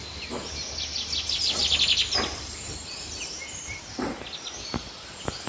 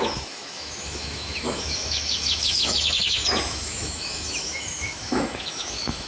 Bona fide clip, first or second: first